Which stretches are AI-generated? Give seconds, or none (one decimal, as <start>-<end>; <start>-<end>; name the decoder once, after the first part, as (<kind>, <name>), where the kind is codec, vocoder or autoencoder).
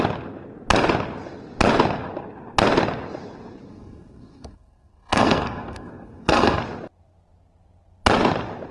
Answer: 3.7-6.6 (codec, SNAC)